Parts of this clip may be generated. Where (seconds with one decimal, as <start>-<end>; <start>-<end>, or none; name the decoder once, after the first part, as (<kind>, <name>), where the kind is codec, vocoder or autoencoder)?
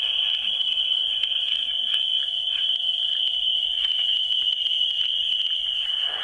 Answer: 0.0-2.1 (vocoder, BigVGAN v2); 3.1-3.7; 4.6-6.2